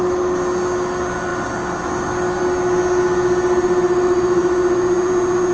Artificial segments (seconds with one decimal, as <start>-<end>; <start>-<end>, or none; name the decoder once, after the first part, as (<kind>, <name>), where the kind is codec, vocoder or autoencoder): none